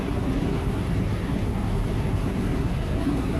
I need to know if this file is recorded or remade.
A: remade